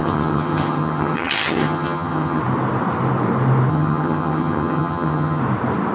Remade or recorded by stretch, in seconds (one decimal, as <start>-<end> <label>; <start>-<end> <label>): 0.0-2.4 remade; 2.4-3.7 recorded; 3.7-5.4 remade; 5.4-5.9 recorded